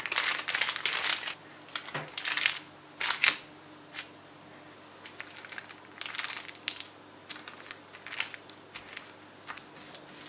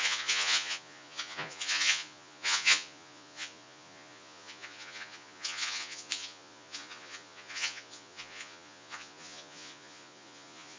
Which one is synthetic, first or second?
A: second